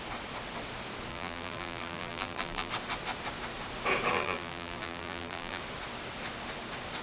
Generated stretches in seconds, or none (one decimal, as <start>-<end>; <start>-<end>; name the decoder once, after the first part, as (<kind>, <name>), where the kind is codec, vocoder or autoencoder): 1.1-2.7 (vocoder, BigVGAN v2); 4.1-5.6